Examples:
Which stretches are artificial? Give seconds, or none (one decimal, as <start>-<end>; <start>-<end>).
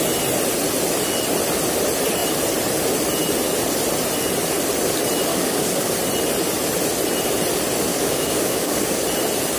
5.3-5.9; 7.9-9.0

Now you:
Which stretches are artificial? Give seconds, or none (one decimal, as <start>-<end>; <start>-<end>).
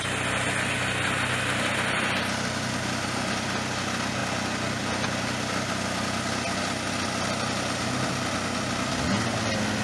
none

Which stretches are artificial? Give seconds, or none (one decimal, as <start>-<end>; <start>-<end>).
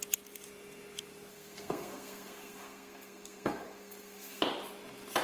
1.3-4.4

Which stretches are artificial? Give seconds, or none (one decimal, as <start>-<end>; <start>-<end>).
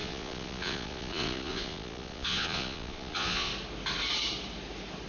0.0-3.5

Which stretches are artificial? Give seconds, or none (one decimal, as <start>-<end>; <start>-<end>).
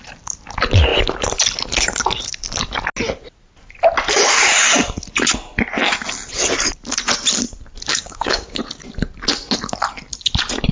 7.9-8.6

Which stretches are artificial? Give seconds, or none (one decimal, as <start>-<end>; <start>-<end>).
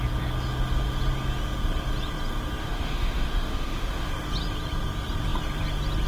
2.6-4.1